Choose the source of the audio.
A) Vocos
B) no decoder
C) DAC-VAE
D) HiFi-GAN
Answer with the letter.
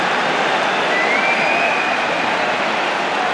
B